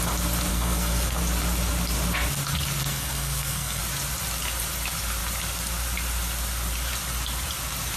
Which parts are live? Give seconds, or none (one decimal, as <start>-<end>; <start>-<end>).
0.0-0.5; 1.2-2.8; 3.8-8.0